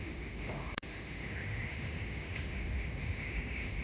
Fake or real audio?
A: fake